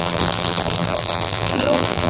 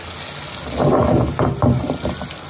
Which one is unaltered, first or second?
second